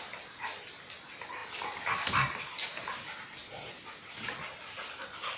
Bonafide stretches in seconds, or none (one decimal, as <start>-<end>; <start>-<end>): 0.0-5.4